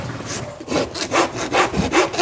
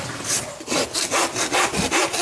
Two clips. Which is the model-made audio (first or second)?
second